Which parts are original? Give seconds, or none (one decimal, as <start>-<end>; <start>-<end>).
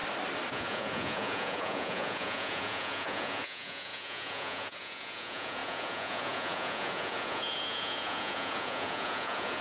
0.0-0.5